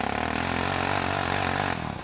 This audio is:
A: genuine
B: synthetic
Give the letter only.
B